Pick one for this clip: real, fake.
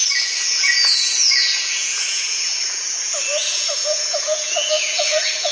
fake